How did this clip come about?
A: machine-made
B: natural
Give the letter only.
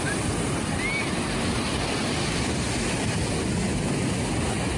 B